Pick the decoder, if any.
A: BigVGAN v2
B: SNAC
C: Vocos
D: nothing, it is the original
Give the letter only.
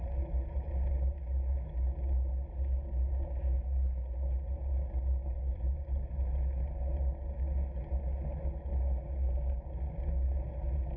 D